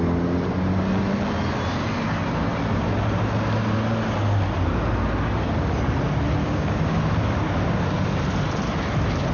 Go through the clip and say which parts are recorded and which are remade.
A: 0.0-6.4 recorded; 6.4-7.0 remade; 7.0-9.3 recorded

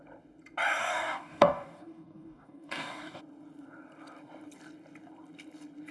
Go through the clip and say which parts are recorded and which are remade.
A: 0.0-0.8 recorded; 0.8-3.2 remade; 3.2-5.9 recorded

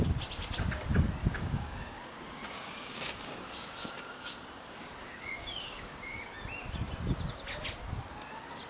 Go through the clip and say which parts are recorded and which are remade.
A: 0.0-1.2 recorded; 1.2-6.2 remade; 6.2-8.7 recorded

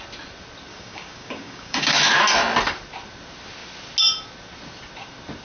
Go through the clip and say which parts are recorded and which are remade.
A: 0.0-0.7 recorded; 0.7-2.0 remade; 2.0-5.4 recorded

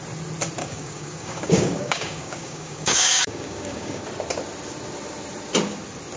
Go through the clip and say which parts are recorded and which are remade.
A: 0.0-0.6 recorded; 0.6-4.0 remade; 4.0-6.2 recorded

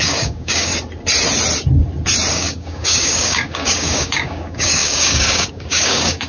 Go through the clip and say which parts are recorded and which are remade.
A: 0.0-0.7 remade; 0.7-2.3 recorded; 2.3-6.3 remade